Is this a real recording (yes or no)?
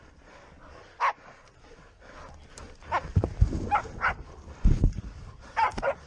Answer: yes